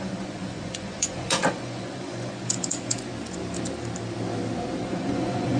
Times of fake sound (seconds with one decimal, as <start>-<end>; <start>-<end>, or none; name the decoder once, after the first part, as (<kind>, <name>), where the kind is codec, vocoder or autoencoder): 0.0-3.1 (vocoder, Vocos); 4.8-5.6